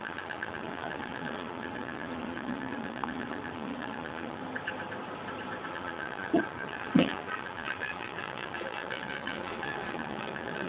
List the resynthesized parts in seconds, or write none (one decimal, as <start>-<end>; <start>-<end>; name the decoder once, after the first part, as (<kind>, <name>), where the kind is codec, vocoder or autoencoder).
0.0-4.4 (vocoder, Vocos); 5.7-10.7